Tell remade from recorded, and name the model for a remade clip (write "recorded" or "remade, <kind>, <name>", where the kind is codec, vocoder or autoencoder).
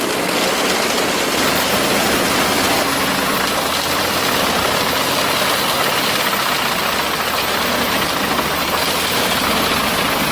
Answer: recorded